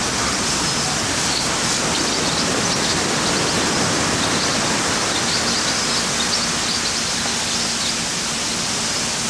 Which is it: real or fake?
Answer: real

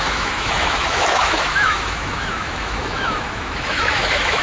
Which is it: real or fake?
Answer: fake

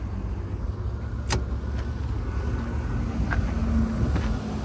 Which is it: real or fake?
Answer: real